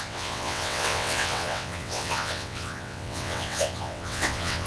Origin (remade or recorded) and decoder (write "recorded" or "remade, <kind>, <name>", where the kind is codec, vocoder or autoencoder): remade, vocoder, WaveNeXt